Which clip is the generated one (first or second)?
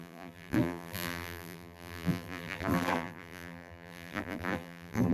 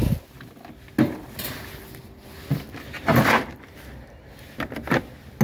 first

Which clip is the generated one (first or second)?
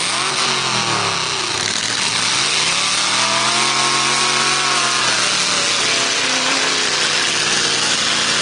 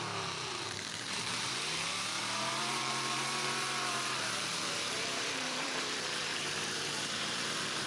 second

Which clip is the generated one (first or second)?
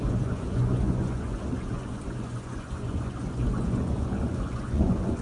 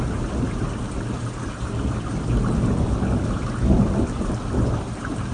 first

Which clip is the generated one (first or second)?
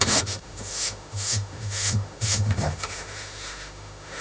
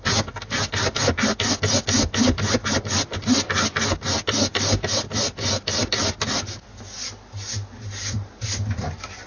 first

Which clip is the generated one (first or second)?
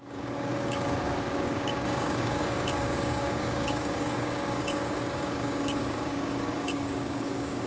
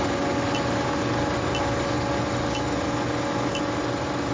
first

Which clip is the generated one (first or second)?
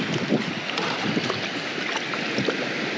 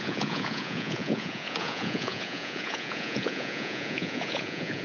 second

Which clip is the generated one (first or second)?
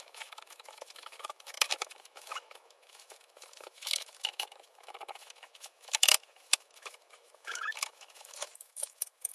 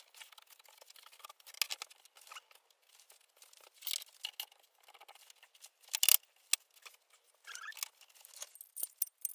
first